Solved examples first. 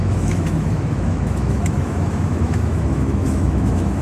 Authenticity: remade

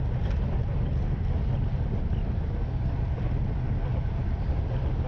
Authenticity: recorded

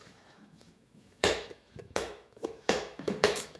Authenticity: remade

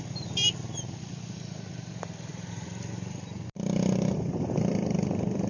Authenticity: recorded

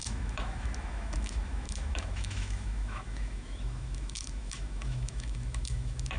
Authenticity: remade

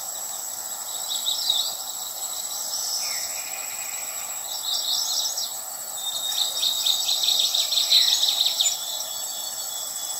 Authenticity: recorded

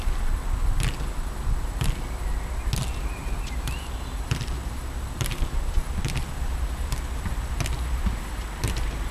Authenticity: recorded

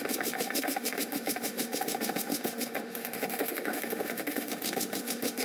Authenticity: remade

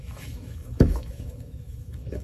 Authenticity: remade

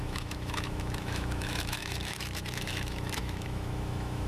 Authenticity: remade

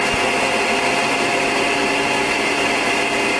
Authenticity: recorded